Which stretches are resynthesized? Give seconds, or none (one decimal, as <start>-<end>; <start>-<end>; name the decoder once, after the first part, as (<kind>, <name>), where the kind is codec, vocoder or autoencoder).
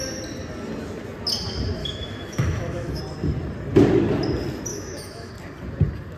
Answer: 1.8-3.0 (autoencoder, DAC-VAE); 4.7-5.3